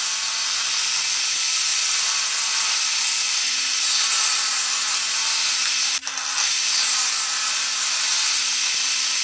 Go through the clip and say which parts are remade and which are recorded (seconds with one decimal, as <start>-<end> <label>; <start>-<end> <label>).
0.0-9.2 recorded